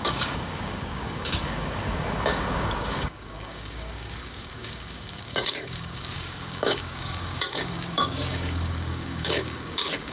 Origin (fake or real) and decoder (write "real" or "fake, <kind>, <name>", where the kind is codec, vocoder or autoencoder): fake, codec, DAC